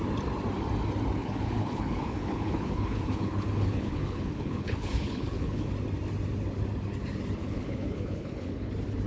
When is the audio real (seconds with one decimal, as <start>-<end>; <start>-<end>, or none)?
0.0-1.2; 5.7-7.4; 8.7-9.1